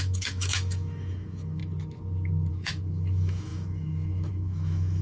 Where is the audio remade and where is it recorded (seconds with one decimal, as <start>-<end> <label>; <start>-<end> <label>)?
0.0-1.6 remade; 1.6-2.5 recorded; 2.5-5.0 remade